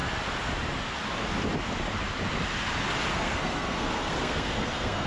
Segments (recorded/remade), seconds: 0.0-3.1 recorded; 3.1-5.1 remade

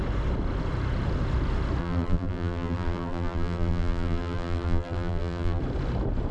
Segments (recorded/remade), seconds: 0.0-1.8 recorded; 1.8-5.6 remade; 5.6-6.3 recorded

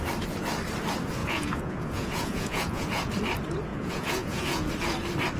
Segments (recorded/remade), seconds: 0.0-1.2 recorded; 1.2-3.1 remade; 3.1-3.7 recorded; 3.7-4.7 remade; 4.7-5.4 recorded